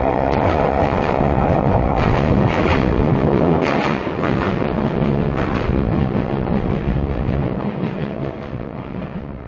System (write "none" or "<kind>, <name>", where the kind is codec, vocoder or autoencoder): vocoder, WaveNeXt